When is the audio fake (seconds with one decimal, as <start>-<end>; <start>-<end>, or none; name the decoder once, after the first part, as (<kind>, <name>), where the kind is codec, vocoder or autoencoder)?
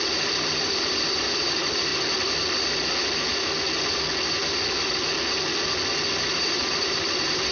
0.0-1.9 (vocoder, BigVGAN v2); 6.4-7.5